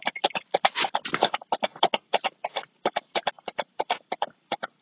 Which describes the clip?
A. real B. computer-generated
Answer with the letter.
B